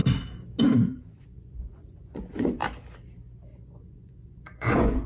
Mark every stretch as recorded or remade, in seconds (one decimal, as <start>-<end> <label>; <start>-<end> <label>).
0.0-0.6 recorded; 0.6-2.6 remade; 2.6-3.5 recorded; 3.5-5.1 remade